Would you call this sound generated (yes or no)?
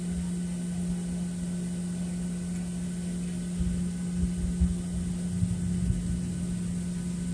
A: no